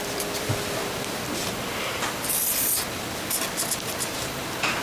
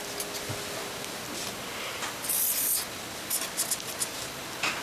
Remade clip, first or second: first